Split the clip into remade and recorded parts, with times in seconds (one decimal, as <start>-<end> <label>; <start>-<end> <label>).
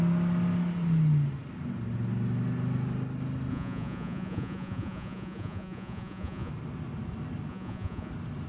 0.0-3.5 recorded; 3.5-6.5 remade; 6.5-7.5 recorded; 7.5-8.1 remade; 8.1-8.5 recorded